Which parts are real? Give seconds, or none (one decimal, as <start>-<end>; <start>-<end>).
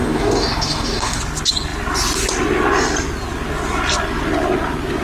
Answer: 1.2-5.0